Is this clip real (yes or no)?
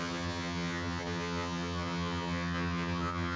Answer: no